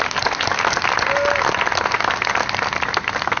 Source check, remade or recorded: recorded